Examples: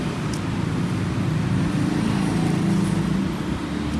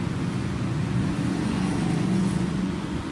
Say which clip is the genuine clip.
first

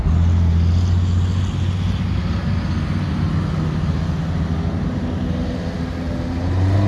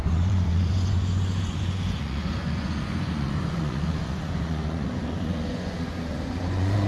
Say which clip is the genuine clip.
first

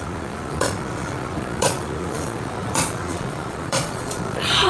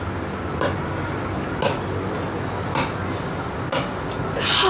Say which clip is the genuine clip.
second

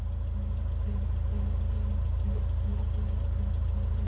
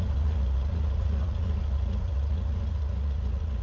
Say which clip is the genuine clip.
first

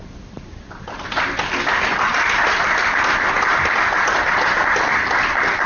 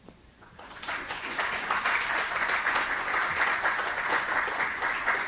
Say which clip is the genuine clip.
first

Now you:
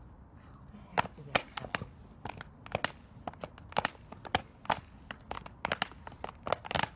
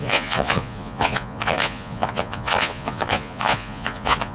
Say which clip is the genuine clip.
first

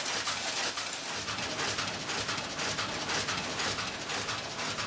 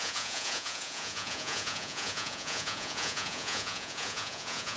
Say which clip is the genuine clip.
first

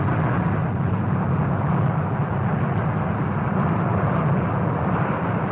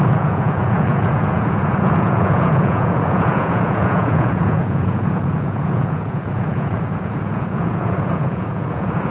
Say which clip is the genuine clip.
first